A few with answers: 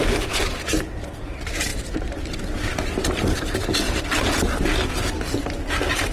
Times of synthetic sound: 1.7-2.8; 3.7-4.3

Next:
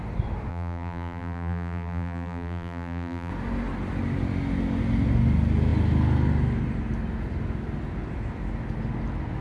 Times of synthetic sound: 0.5-3.3

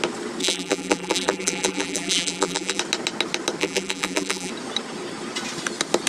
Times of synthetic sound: 0.4-2.8; 3.6-4.5

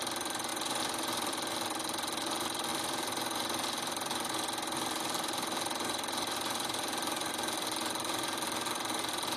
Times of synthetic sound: 0.5-1.3; 2.7-7.3

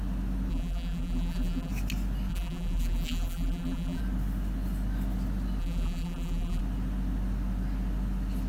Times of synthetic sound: 0.5-1.7; 2.3-4.0; 5.6-6.6

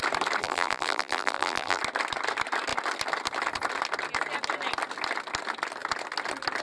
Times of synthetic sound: 0.4-1.8

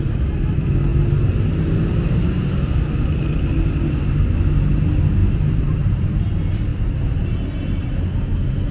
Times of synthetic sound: 5.2-6.2; 6.7-8.0